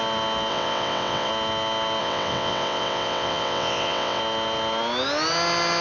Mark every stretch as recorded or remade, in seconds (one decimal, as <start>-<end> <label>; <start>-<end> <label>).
0.0-0.5 recorded; 0.5-1.3 remade; 1.3-2.0 recorded; 2.0-4.2 remade; 4.2-5.8 recorded